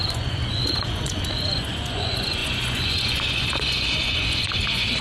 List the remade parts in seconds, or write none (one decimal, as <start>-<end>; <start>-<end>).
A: 0.0-5.0